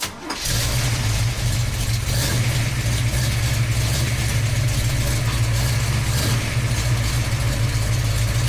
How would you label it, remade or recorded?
recorded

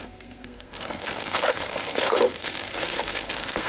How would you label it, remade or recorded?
remade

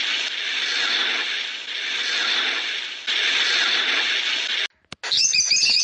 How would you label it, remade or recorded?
recorded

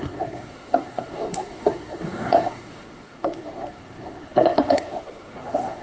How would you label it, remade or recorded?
remade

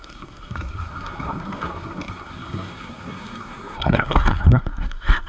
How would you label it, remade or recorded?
remade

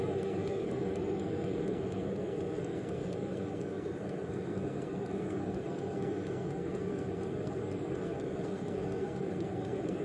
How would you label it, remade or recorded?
remade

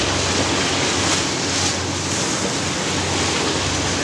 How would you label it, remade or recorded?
recorded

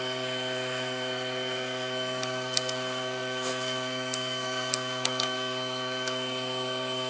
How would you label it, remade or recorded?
remade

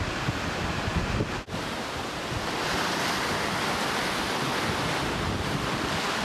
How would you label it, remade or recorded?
recorded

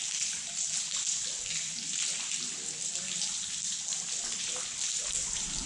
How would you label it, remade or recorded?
recorded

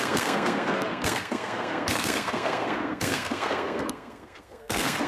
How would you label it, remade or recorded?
remade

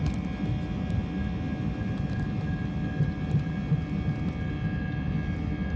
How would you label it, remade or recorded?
recorded